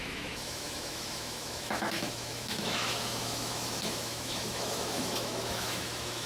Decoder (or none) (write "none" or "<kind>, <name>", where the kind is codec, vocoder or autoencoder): autoencoder, DAC-VAE